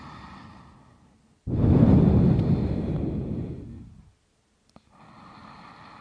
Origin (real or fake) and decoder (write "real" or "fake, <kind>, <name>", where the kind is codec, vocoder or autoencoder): real